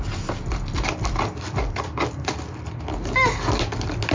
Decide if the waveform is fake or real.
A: real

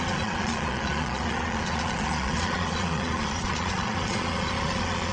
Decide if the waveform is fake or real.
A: fake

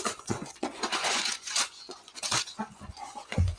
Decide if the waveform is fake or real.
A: fake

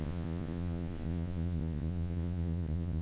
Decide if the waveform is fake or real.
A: fake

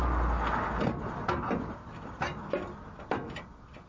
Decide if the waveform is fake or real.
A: real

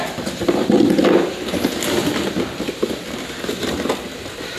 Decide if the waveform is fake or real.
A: real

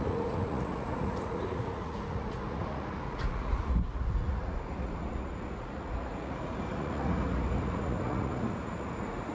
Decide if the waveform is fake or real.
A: fake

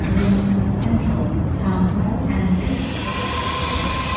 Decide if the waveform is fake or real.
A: real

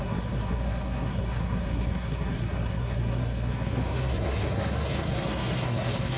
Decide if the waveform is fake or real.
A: fake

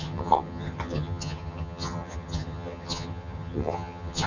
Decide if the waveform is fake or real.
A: fake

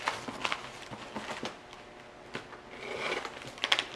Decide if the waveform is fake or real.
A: real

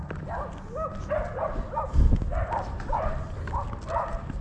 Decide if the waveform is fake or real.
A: real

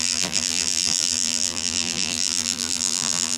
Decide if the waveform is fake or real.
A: fake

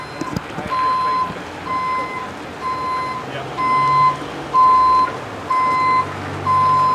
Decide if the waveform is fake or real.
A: real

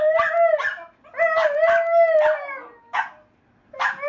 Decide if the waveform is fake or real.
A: real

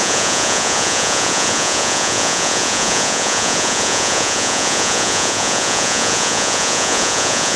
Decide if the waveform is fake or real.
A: fake